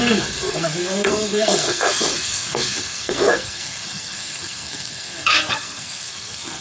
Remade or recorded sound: remade